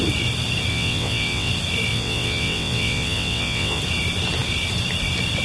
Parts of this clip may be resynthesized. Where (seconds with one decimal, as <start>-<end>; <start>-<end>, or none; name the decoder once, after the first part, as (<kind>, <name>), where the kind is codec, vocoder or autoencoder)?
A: 0.7-1.5 (vocoder, WaveNeXt); 1.9-3.8